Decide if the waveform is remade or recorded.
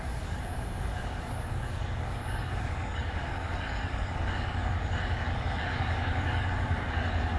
remade